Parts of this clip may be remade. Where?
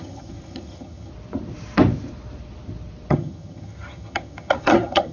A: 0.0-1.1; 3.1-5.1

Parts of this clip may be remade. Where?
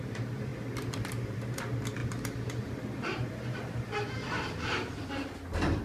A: 0.5-1.6; 2.0-5.1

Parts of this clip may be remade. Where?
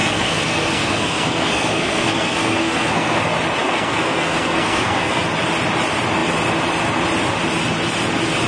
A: 0.0-3.2; 3.6-5.2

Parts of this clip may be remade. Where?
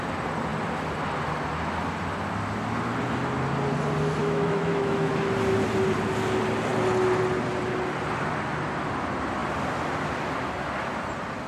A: 4.2-5.1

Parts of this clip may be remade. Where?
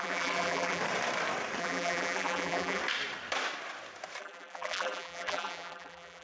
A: 0.0-0.8; 1.6-2.8; 4.2-6.2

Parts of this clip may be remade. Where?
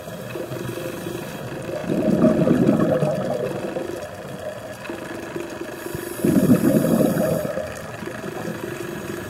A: 8.5-9.3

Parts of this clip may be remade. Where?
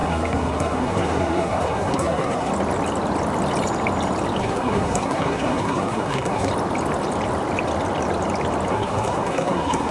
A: 0.0-2.5; 4.4-6.5; 8.7-9.9